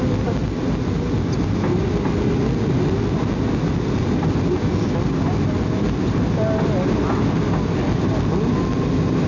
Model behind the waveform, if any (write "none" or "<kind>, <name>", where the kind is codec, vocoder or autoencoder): none